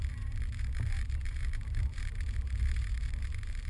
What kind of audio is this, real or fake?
fake